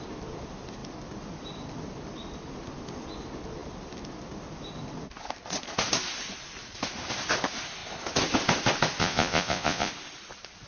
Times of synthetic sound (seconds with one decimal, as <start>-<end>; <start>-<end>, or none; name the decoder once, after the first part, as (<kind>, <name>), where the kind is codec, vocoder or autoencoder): 9.0-9.9 (vocoder, Vocos)